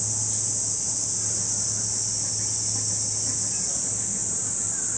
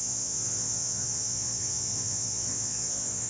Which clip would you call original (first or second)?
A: first